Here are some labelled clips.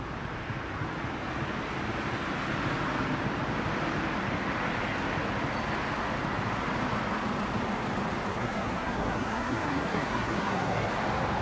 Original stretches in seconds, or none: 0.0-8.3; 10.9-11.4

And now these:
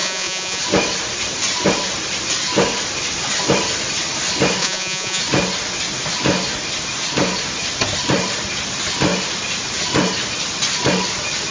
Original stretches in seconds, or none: 0.6-4.6; 5.2-11.5

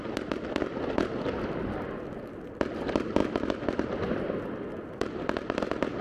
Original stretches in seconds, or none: 0.0-6.0

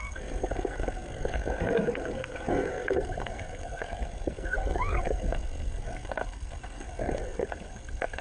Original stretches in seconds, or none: none

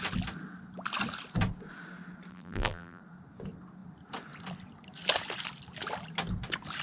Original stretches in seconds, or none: 0.0-2.3; 3.0-6.8

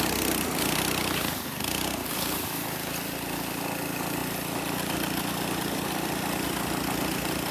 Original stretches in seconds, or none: 0.0-7.5

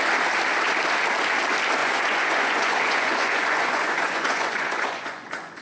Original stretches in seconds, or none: 0.0-1.8

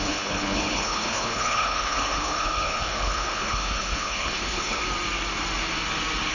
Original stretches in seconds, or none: 4.8-6.3